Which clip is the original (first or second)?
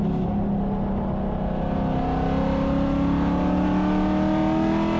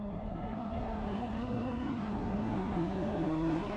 first